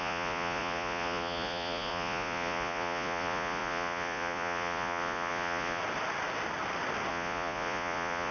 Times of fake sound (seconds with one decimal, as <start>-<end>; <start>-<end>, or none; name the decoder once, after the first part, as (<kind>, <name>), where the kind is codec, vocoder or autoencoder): 0.0-5.8 (vocoder, Vocos); 7.1-8.3